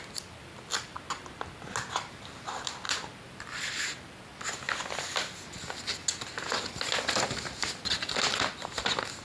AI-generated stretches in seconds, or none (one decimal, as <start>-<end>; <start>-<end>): none